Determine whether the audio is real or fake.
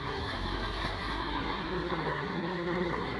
fake